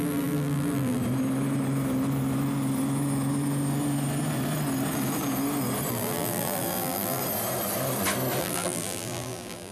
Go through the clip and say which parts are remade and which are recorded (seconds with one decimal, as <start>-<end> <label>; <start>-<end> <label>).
0.0-1.0 remade; 1.0-5.9 recorded; 5.9-7.2 remade; 7.2-8.4 recorded; 8.4-9.7 remade